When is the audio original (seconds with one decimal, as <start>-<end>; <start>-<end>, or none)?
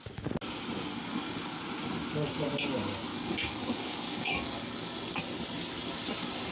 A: 0.0-0.9; 1.6-3.1; 5.2-6.5